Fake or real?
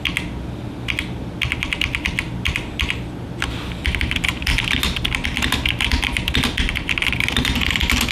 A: real